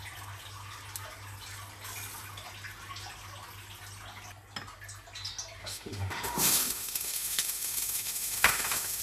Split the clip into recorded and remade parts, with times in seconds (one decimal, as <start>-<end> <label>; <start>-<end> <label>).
0.0-5.6 recorded; 5.6-9.0 remade